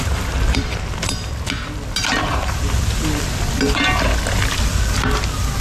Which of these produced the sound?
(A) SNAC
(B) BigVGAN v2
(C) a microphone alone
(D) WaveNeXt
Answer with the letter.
C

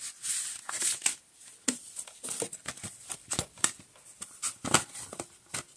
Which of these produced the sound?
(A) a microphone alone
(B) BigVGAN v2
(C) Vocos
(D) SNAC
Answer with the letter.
A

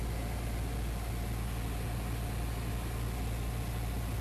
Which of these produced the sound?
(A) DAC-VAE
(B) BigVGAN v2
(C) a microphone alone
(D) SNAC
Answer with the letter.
C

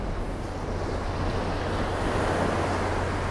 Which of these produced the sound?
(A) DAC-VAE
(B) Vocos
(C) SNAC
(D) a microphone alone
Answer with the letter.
D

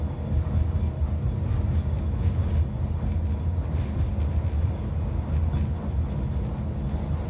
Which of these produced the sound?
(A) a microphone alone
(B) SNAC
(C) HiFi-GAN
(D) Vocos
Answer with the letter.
A